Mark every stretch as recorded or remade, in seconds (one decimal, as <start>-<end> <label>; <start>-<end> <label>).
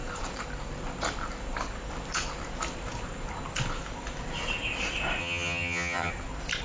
0.0-5.2 recorded; 5.2-6.1 remade; 6.1-6.6 recorded